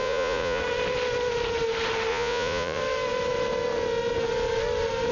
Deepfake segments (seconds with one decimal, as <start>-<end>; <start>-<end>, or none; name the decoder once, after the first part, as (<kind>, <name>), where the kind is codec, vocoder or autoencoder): 0.0-0.6 (vocoder, Vocos); 2.1-2.8